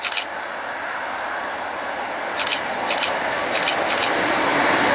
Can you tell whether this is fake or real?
real